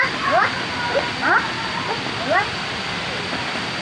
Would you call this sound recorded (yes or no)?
yes